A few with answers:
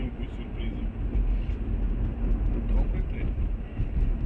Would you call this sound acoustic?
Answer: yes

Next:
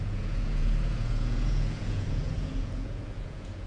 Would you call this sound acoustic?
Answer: no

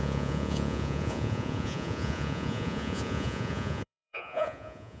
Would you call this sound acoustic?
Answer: no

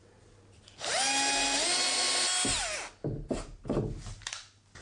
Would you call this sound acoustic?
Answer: yes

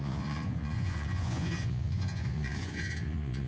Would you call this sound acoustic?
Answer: no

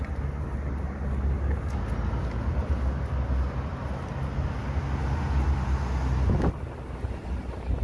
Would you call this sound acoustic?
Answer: yes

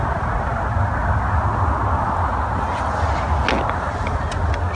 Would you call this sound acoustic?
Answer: yes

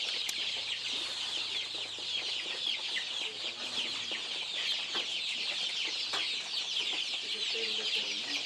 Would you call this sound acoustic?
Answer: yes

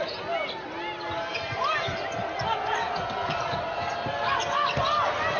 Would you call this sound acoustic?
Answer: yes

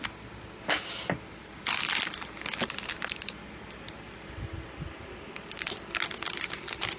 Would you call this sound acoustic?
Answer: yes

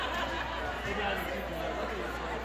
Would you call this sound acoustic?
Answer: yes